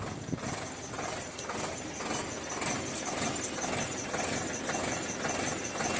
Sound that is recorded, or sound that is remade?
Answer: recorded